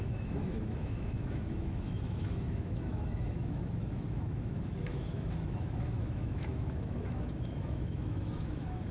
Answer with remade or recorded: remade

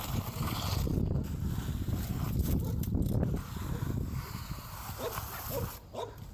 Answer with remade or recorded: recorded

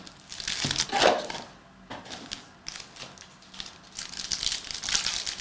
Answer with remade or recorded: recorded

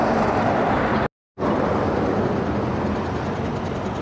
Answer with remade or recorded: recorded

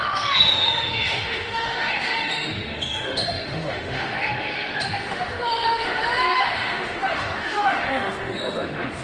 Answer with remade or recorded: remade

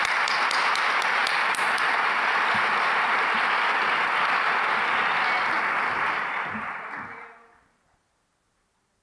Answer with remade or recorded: recorded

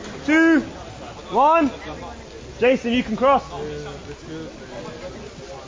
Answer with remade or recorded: recorded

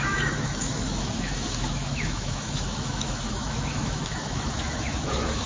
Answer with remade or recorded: remade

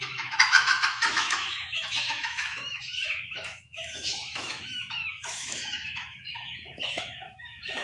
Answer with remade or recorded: remade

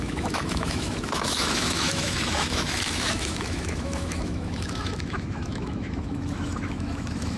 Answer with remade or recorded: remade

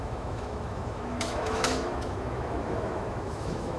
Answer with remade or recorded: remade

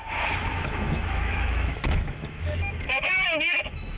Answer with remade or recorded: remade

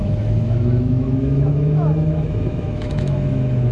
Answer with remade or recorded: remade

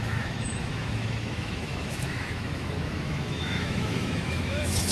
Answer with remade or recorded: remade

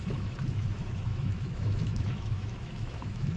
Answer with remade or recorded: remade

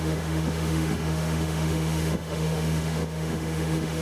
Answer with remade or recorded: remade